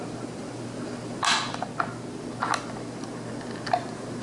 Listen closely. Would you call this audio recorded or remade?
recorded